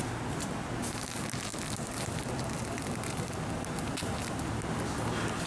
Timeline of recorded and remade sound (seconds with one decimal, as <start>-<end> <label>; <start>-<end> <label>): 0.0-5.5 recorded